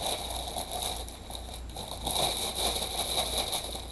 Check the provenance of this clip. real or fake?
real